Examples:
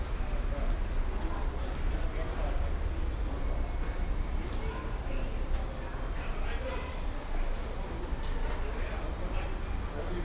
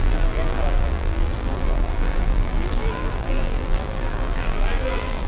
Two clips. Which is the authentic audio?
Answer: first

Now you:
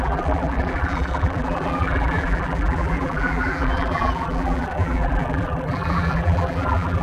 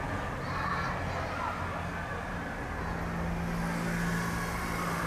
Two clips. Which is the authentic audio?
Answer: second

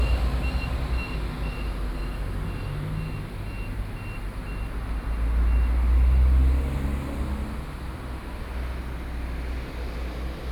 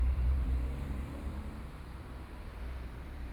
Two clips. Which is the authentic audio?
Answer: first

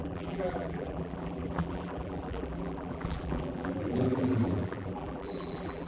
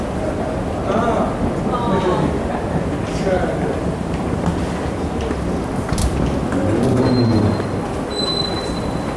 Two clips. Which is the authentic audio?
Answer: second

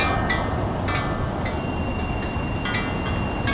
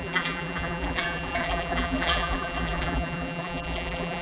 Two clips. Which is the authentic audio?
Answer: first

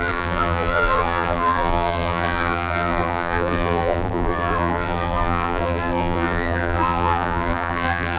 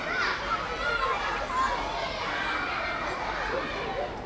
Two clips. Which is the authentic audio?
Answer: second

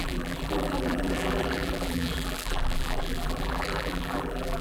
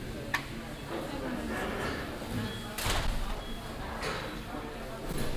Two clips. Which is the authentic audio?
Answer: second